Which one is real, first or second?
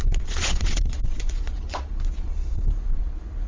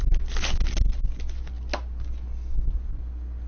second